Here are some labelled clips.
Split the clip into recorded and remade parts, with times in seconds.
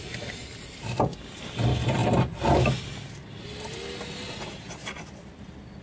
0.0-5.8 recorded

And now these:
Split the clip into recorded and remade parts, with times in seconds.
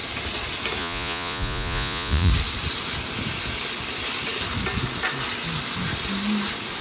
0.0-0.8 recorded; 0.8-2.3 remade; 2.3-6.8 recorded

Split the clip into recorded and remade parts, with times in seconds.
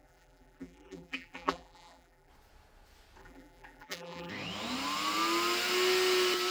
0.0-2.3 remade; 2.3-3.2 recorded; 3.2-4.3 remade; 4.3-6.5 recorded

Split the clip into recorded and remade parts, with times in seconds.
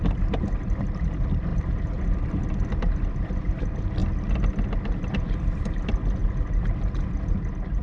0.0-7.8 recorded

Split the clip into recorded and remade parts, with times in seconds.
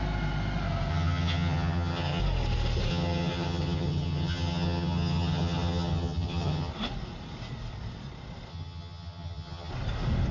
0.0-0.9 recorded; 0.9-2.2 remade; 2.2-2.9 recorded; 2.9-6.7 remade; 6.7-8.5 recorded; 8.5-9.7 remade; 9.7-10.3 recorded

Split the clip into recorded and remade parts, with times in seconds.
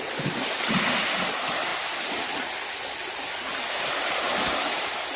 0.0-5.2 recorded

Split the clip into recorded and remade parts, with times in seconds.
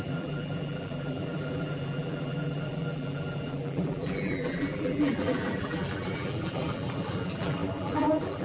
0.0-8.4 remade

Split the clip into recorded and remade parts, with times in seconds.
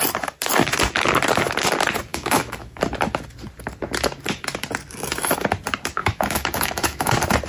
0.0-2.1 recorded; 2.1-2.8 remade; 2.8-6.0 recorded; 6.0-7.1 remade; 7.1-7.5 recorded